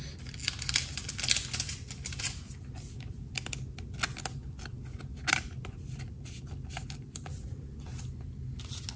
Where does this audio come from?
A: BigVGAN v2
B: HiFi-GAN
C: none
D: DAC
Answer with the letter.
C